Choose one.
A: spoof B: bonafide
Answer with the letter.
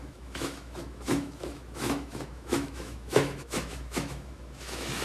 A